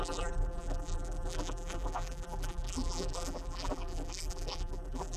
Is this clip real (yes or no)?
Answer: no